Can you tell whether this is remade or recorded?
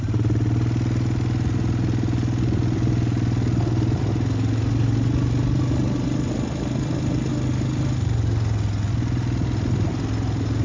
recorded